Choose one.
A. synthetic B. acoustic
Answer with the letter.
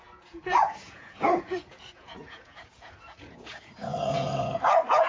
A